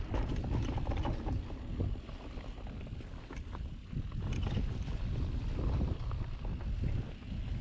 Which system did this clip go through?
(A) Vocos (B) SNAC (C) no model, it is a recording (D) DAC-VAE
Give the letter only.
C